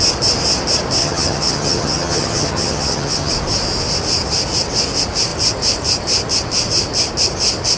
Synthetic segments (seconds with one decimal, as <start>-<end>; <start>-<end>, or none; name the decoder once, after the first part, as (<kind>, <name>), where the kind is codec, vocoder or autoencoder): 1.0-3.3 (vocoder, HiFi-GAN)